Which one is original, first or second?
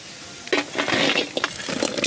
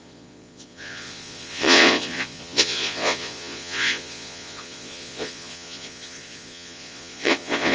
first